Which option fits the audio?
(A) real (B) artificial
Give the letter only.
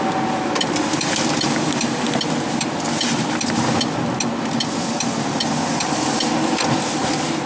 A